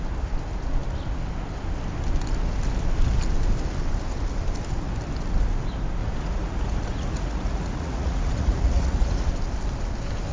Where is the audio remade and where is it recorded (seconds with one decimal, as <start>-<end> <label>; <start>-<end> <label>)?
0.0-6.0 recorded; 6.0-9.3 remade; 9.3-10.3 recorded